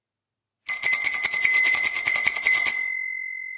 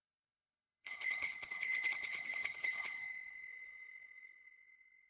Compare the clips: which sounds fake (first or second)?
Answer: second